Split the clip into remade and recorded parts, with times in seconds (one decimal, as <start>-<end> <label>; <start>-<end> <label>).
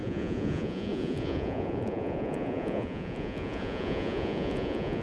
0.0-5.0 remade